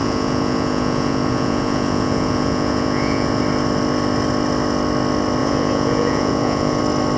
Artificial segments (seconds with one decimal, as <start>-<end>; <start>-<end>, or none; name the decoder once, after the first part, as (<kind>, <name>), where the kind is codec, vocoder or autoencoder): 0.0-3.4 (vocoder, Vocos); 5.4-6.8